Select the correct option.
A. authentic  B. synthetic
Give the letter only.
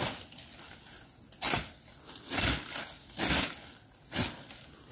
A